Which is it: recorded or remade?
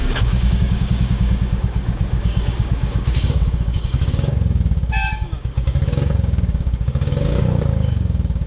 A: remade